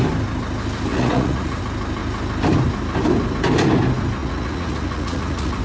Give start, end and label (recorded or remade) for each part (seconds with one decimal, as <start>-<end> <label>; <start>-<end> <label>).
0.0-0.9 recorded; 0.9-1.6 remade; 1.6-4.2 recorded; 4.2-5.6 remade